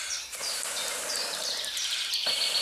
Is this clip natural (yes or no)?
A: no